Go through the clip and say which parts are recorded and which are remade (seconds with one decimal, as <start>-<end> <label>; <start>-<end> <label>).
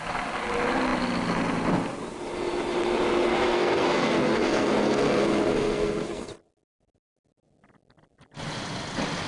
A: 0.0-3.3 recorded; 3.3-6.3 remade; 6.3-9.3 recorded